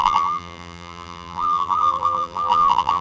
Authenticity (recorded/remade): remade